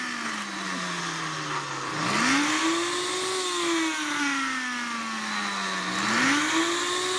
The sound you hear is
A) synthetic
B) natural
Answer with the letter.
B